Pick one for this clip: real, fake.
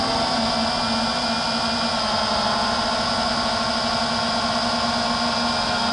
real